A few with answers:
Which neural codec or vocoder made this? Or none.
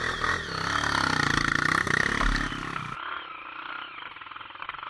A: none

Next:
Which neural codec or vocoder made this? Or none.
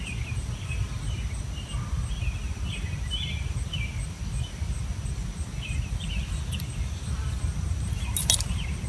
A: none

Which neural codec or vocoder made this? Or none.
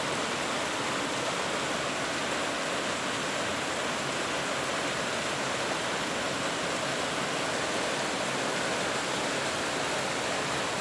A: none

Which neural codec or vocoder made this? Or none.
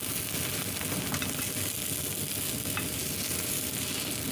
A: none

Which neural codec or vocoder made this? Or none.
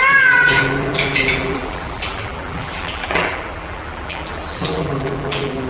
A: vocoder, BigVGAN v2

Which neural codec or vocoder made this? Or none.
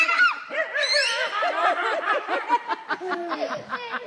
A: vocoder, BigVGAN v2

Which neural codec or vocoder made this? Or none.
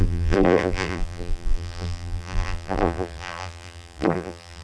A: vocoder, BigVGAN v2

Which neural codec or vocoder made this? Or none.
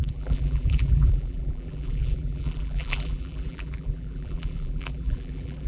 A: vocoder, BigVGAN v2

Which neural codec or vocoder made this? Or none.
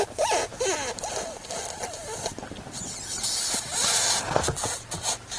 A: none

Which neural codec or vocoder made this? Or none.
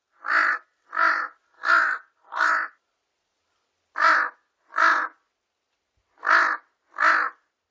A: none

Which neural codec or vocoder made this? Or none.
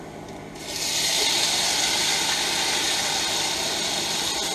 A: none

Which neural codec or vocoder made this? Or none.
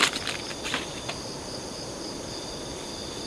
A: vocoder, BigVGAN v2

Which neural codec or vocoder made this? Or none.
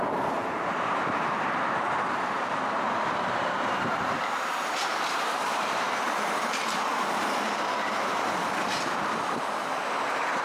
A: vocoder, BigVGAN v2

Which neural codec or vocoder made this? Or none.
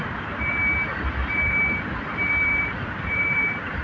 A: vocoder, BigVGAN v2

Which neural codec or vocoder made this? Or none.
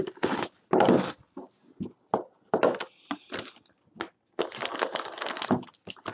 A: none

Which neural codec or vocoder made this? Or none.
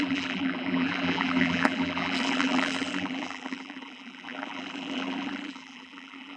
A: vocoder, BigVGAN v2